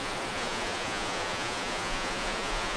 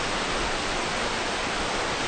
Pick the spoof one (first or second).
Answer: first